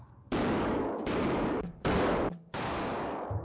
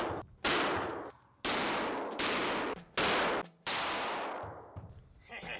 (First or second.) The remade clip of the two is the first